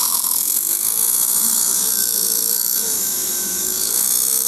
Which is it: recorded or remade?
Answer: remade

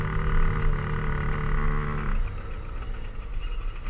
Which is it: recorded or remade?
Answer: recorded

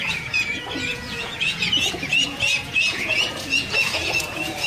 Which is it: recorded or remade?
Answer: remade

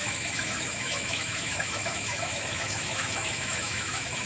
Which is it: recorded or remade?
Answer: remade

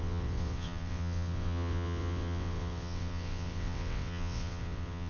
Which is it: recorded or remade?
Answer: remade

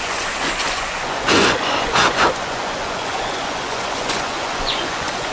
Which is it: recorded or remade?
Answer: remade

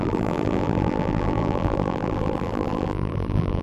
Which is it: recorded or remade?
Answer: remade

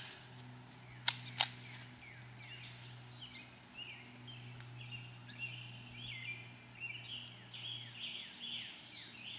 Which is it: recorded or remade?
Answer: recorded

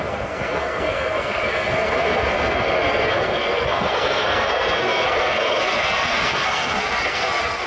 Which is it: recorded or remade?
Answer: remade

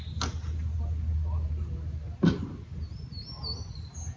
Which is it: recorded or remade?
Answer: recorded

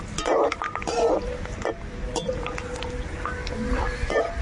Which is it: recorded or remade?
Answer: recorded